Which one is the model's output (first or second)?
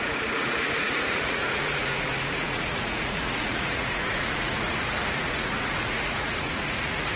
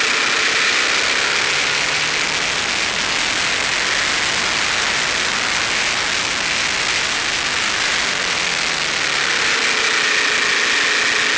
first